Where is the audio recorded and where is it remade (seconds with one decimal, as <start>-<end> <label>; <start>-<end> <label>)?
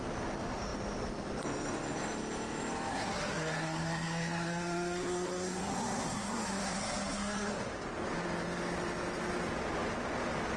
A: 0.0-2.9 recorded; 2.9-7.6 remade; 7.6-10.6 recorded